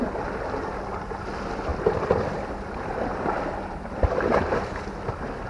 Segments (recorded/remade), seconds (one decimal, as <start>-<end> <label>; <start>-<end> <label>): 0.0-5.5 recorded